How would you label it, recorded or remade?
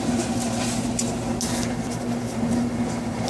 recorded